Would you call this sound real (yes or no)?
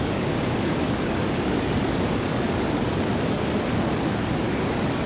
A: no